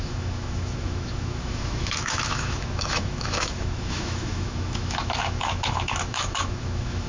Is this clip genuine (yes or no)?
no